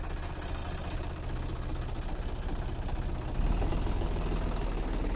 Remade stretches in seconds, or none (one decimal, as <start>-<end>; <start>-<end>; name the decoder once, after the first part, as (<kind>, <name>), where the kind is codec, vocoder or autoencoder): none